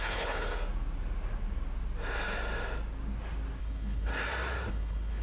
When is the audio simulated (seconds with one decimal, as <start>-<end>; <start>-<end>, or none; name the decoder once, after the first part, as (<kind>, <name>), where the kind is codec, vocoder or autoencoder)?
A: 0.0-0.5 (codec, HILCodec); 3.6-4.1; 4.7-5.2